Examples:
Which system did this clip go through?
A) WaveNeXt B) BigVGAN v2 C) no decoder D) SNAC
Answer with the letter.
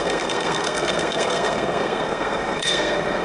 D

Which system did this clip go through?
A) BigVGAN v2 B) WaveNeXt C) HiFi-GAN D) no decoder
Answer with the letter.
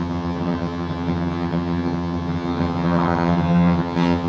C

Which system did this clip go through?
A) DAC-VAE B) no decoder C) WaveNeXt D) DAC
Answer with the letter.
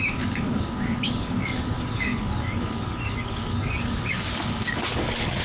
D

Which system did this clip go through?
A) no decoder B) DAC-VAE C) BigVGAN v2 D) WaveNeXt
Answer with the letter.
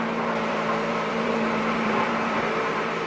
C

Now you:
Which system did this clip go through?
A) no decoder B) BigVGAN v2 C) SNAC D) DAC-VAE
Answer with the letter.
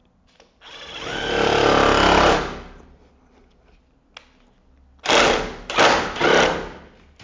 A